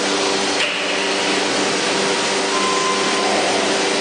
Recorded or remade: recorded